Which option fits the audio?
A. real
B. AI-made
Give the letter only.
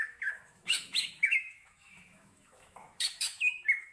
B